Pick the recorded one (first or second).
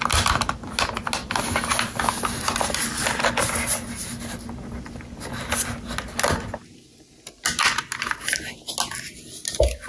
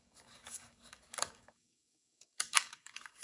first